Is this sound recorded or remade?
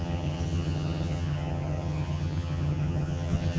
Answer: remade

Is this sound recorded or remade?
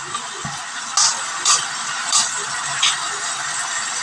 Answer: recorded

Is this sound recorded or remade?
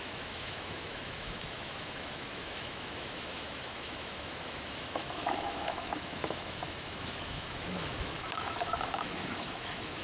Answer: remade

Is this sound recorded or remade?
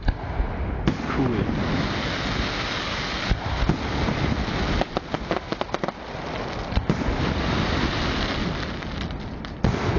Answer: recorded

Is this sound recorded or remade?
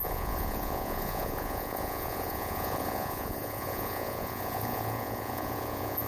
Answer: remade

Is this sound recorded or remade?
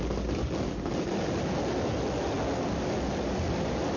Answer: recorded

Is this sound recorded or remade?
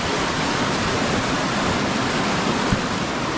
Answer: recorded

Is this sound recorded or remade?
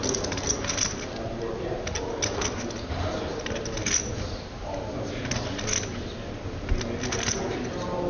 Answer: recorded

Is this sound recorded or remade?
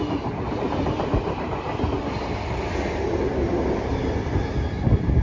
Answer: recorded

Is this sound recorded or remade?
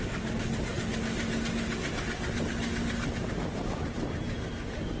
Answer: recorded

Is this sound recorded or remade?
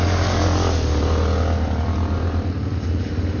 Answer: recorded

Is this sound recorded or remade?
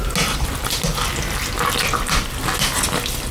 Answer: recorded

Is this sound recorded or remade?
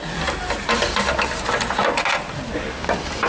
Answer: recorded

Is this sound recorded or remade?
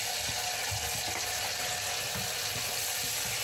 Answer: recorded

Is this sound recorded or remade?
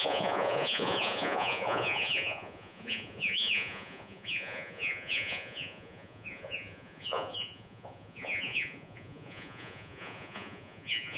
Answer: remade